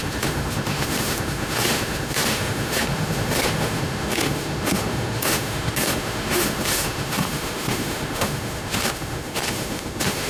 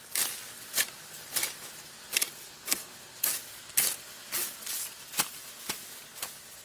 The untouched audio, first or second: second